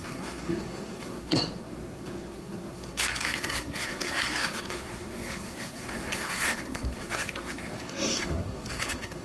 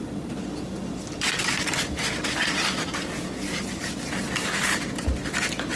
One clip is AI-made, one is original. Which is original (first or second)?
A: second